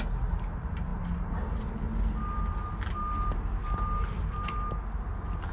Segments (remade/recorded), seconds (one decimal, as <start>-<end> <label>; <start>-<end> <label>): 0.0-5.5 recorded